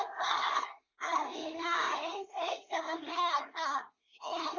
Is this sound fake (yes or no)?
yes